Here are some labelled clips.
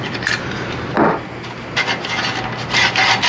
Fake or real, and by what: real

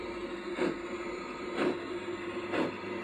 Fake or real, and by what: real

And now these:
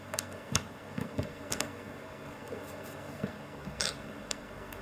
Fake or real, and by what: fake, codec, SNAC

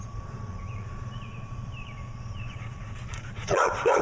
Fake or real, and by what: fake, vocoder, Vocos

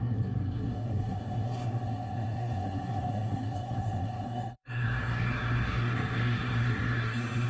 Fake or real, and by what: fake, codec, SNAC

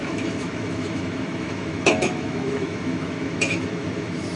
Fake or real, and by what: fake, autoencoder, DAC-VAE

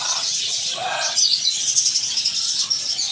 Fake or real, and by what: fake, vocoder, Vocos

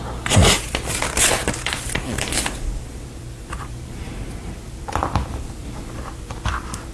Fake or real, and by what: fake, vocoder, BigVGAN v2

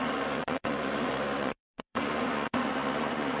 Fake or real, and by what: fake, vocoder, Vocos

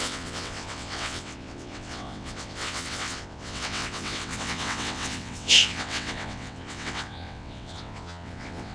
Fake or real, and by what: fake, vocoder, WaveNeXt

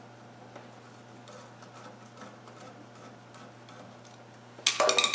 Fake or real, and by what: real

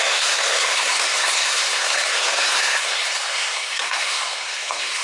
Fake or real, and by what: fake, codec, SNAC